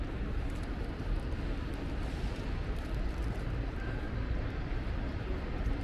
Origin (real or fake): fake